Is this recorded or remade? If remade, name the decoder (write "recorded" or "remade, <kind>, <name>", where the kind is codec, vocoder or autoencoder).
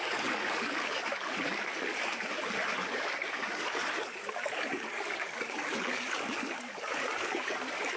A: remade, codec, DAC